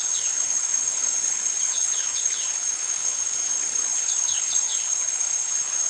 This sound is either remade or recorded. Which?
remade